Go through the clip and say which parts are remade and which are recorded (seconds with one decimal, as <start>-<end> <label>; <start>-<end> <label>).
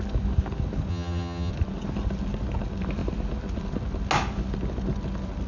0.0-0.9 recorded; 0.9-1.5 remade; 1.5-5.5 recorded